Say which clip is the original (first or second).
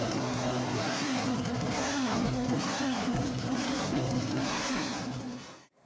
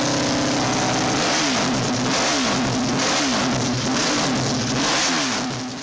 second